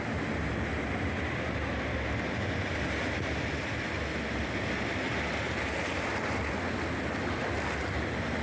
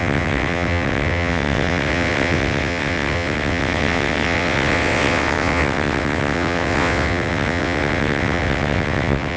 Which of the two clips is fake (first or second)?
second